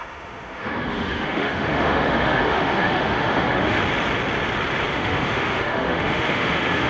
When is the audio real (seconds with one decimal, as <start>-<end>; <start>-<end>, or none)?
3.8-4.9